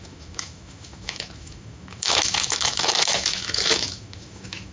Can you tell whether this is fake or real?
fake